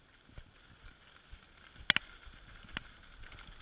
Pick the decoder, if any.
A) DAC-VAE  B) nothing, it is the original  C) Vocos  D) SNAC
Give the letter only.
B